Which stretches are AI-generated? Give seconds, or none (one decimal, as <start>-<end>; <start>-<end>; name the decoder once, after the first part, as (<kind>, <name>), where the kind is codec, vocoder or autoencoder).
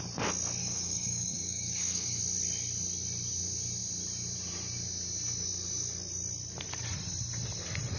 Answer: 0.6-2.2 (codec, DAC)